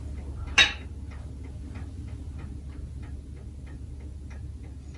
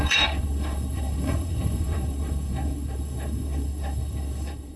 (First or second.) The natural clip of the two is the first